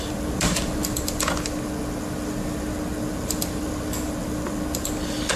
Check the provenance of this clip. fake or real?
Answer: real